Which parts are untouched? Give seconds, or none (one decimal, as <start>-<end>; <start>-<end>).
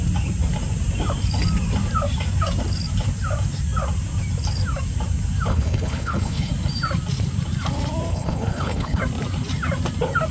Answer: 0.0-5.5; 6.5-8.1; 9.0-10.3